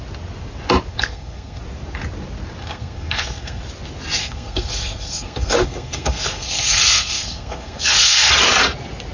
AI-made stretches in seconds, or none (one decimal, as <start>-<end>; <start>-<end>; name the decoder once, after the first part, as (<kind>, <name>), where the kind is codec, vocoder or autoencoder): 0.9-1.6 (codec, SNAC); 2.6-3.6; 4.2-8.3